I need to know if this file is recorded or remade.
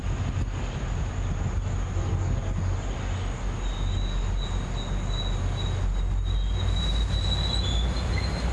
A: recorded